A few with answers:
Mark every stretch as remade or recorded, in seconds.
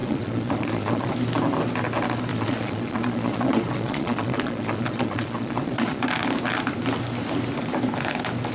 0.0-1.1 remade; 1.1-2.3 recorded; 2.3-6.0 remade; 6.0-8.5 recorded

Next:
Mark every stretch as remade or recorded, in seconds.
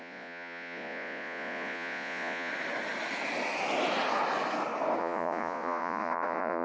0.0-2.5 remade; 2.5-5.0 recorded; 5.0-6.6 remade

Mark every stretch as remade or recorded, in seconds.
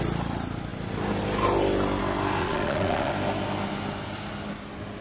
0.0-2.4 recorded; 2.4-3.1 remade; 3.1-5.0 recorded